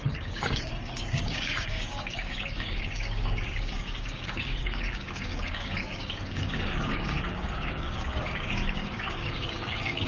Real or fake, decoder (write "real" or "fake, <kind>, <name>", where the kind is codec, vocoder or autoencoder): fake, codec, DAC